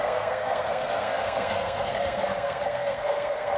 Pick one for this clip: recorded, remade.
remade